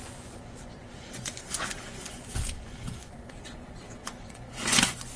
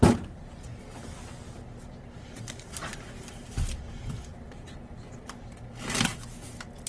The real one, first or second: second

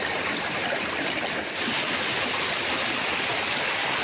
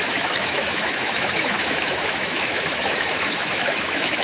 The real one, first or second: first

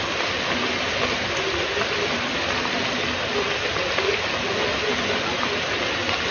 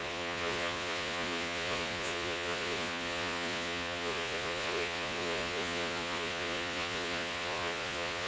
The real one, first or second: first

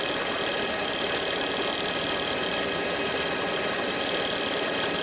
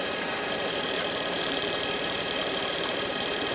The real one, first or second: first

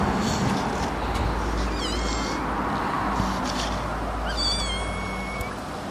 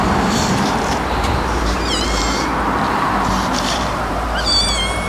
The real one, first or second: first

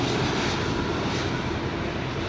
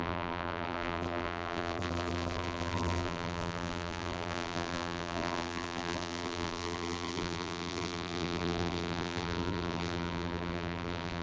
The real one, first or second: first